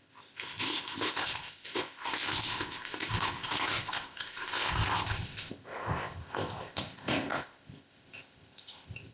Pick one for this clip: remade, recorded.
remade